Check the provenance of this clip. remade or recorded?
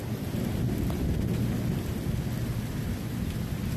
recorded